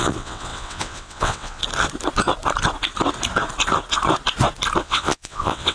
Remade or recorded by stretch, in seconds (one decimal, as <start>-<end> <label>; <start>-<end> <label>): 0.0-1.6 remade; 1.6-4.8 recorded; 4.8-5.7 remade